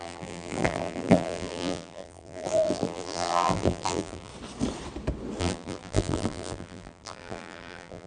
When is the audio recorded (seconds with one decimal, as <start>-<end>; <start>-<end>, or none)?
4.3-5.4